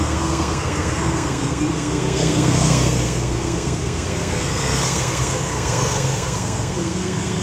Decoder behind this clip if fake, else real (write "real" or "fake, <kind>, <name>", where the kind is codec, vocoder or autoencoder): fake, codec, SNAC